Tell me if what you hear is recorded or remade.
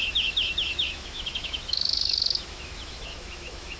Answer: remade